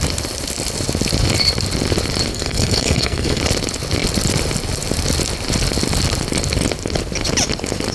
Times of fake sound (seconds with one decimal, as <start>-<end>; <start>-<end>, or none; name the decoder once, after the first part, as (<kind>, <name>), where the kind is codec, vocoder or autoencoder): 2.3-3.4 (codec, SNAC)